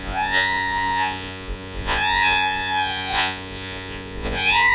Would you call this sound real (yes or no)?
no